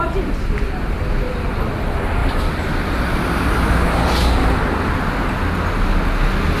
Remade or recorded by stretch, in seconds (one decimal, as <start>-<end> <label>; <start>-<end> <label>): 0.0-6.6 recorded